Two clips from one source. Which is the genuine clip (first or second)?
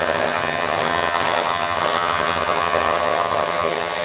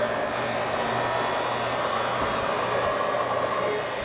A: second